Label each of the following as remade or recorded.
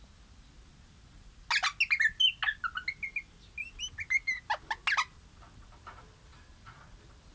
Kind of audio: recorded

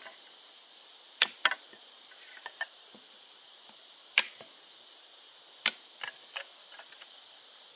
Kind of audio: recorded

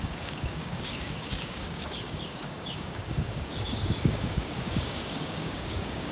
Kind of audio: remade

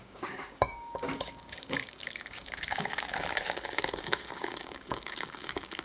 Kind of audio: remade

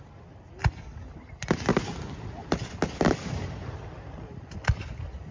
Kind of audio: recorded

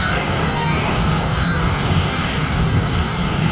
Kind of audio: remade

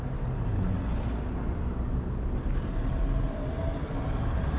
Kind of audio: recorded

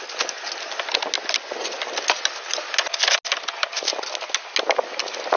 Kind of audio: recorded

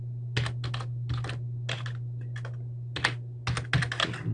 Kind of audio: recorded